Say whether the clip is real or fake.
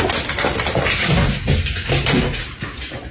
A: real